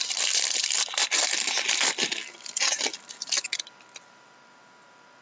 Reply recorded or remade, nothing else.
recorded